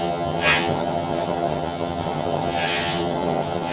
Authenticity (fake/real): fake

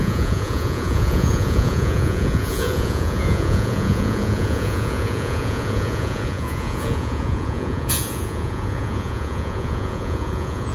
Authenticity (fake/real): fake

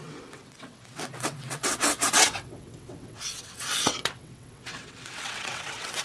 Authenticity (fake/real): fake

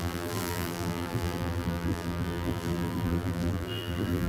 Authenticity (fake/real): fake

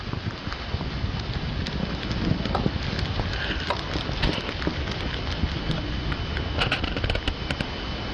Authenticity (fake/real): real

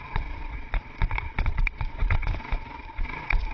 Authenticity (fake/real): fake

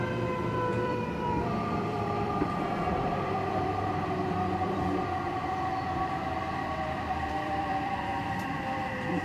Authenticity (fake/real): fake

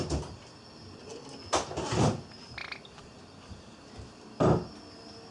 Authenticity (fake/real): real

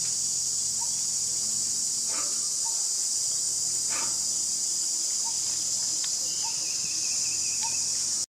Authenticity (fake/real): real